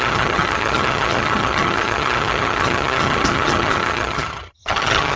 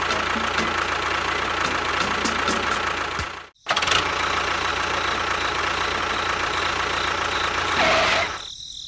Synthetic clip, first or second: first